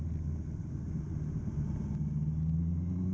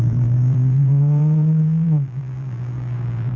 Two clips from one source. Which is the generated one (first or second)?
second